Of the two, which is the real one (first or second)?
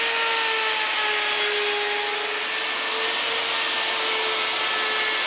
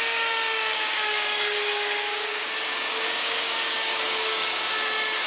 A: first